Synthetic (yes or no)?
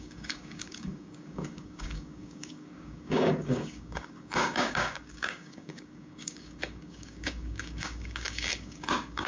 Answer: yes